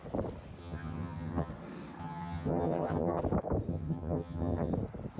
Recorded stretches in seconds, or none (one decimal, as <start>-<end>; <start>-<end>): 0.0-0.6; 1.5-2.0; 3.2-3.7; 4.7-5.2